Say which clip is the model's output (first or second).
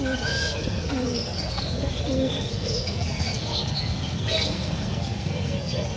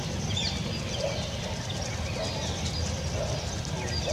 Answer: first